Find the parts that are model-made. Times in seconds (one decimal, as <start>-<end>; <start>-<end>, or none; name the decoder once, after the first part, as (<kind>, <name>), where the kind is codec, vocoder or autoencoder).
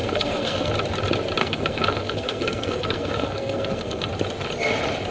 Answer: 0.0-0.7 (codec, SNAC); 1.4-4.1